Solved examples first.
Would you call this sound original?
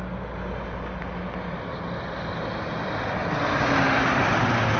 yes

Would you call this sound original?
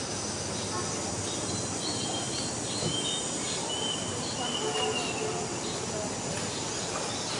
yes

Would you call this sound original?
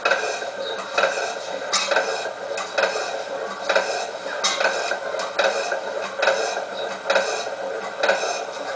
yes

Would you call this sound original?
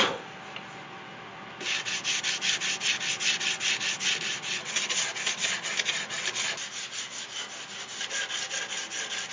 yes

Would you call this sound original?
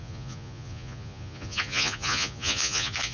no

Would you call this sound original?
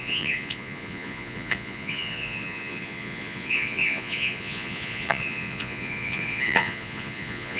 no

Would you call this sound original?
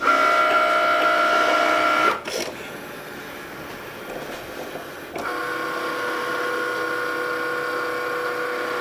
yes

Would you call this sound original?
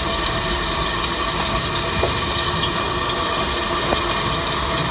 yes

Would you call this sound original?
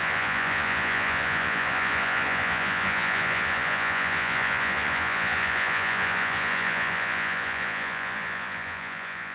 no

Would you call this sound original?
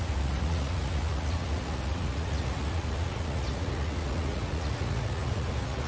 no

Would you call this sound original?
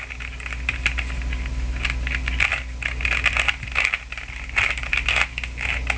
yes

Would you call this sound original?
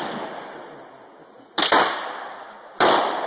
yes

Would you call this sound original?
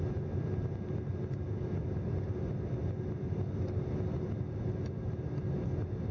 yes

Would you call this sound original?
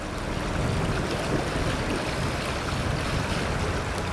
yes